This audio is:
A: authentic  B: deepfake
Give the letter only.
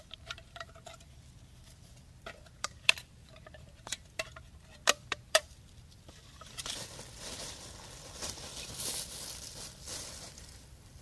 B